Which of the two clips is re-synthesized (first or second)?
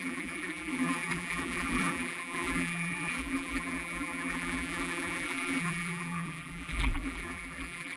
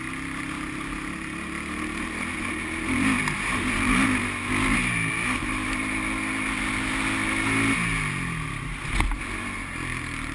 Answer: first